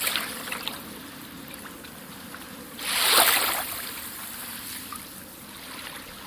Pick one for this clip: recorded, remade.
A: recorded